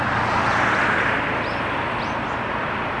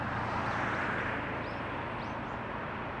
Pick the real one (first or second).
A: second